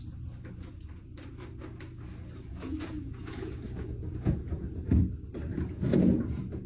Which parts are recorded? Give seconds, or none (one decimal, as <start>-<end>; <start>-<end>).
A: 0.0-2.5; 5.0-5.5